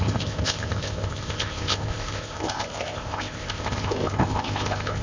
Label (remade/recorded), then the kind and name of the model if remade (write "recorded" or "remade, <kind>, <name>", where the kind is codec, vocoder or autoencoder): remade, codec, ZipCodec